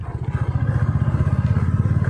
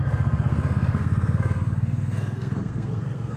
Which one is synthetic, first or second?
second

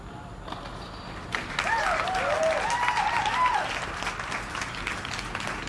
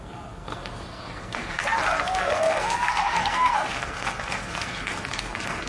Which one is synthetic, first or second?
second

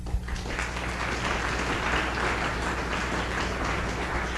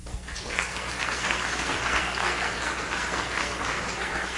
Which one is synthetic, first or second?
second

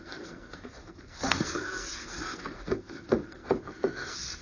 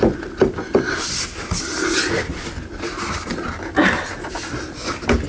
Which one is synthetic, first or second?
first